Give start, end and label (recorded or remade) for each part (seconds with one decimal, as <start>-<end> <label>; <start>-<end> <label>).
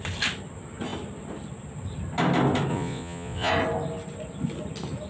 0.0-2.7 recorded; 2.7-3.5 remade; 3.5-5.1 recorded